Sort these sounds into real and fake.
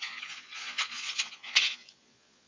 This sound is fake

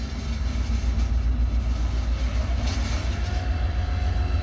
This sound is real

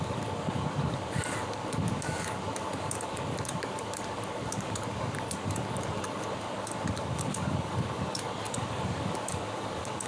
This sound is fake